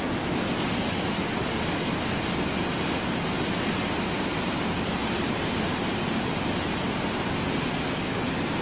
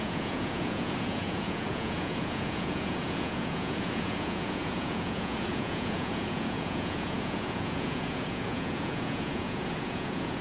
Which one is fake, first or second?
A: second